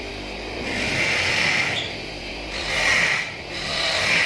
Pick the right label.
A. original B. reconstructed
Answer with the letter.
A